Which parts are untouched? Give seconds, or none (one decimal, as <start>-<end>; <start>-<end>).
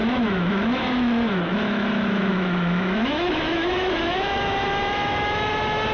none